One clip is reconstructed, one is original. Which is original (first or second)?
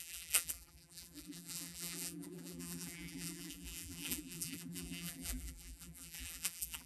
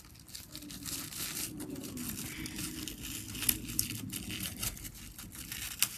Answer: second